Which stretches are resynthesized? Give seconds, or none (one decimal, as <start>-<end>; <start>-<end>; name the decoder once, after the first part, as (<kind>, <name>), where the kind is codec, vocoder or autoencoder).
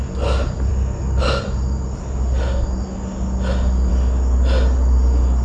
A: none